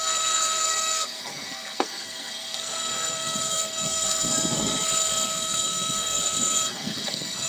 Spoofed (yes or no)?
yes